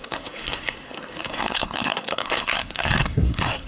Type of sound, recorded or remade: remade